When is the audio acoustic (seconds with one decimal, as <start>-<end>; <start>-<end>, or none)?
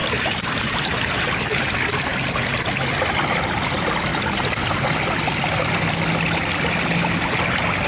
1.6-4.1; 4.8-7.9